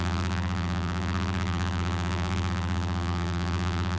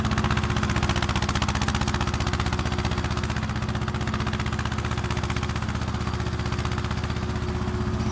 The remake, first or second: first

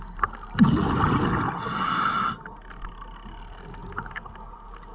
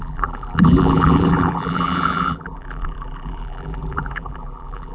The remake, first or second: second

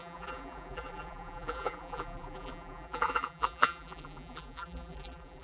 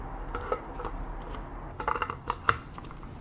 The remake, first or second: first